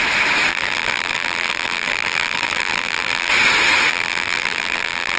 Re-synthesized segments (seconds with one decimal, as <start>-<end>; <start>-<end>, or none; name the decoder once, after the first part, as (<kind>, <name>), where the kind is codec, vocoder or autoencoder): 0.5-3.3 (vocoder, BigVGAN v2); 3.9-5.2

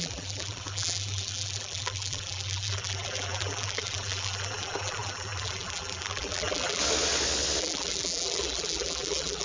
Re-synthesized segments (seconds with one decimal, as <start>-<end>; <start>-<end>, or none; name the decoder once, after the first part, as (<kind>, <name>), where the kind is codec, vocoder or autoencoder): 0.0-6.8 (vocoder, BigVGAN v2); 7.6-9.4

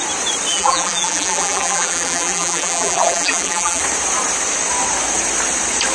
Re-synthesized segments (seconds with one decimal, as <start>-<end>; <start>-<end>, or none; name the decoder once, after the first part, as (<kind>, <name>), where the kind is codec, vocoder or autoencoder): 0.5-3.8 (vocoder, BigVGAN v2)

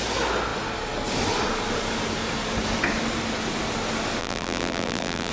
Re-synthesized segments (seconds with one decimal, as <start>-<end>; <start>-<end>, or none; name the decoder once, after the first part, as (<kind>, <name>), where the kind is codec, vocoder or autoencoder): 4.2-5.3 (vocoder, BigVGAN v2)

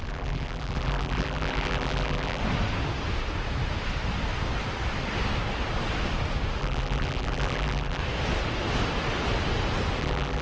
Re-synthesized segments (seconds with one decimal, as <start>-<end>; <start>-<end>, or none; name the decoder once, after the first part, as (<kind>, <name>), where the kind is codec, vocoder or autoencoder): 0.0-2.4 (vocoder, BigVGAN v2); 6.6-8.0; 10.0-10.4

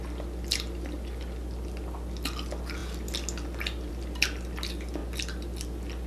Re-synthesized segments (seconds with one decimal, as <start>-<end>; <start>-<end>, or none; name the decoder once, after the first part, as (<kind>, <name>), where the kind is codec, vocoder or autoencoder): none